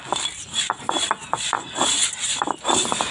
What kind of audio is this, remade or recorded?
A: recorded